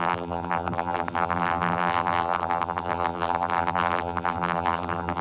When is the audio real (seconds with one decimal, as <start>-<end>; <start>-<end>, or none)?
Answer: none